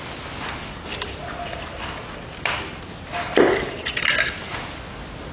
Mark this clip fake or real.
real